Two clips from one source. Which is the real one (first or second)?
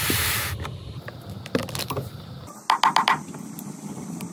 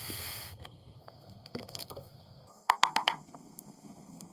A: first